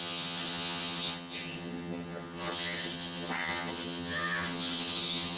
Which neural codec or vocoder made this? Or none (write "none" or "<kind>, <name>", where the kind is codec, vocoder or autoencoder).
vocoder, HiFi-GAN